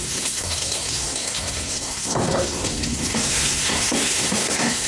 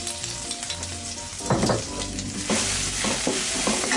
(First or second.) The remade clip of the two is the first